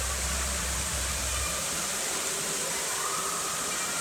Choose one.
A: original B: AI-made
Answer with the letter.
B